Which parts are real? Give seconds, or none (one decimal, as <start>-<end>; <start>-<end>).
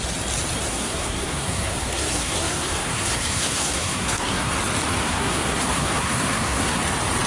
0.0-0.7; 4.5-5.0; 6.8-7.3